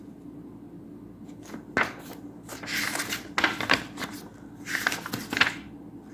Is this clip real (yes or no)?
yes